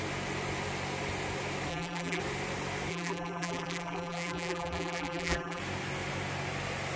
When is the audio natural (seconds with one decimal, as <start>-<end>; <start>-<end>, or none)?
0.0-1.7; 2.2-2.9; 5.6-7.0